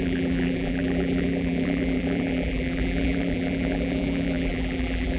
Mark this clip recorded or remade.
remade